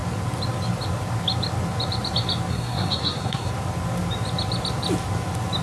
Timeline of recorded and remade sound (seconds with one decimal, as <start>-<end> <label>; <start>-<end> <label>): 0.0-2.5 recorded; 2.5-3.5 remade; 3.5-5.6 recorded